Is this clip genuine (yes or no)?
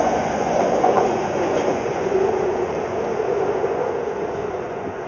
no